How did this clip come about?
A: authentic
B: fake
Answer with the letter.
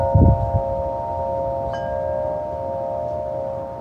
A